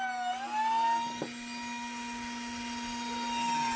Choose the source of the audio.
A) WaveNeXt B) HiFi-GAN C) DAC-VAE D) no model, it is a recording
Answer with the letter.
D